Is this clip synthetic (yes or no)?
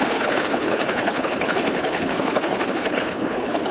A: yes